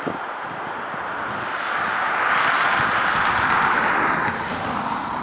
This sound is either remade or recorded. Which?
recorded